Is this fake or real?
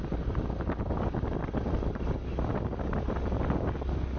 real